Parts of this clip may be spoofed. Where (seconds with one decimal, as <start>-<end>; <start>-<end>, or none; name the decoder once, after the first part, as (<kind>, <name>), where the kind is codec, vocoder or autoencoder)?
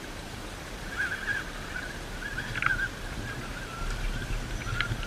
none